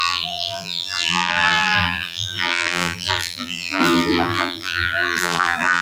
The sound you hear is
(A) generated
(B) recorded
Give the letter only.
A